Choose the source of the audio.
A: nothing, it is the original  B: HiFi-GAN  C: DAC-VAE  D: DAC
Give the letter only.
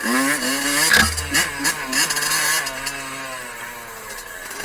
A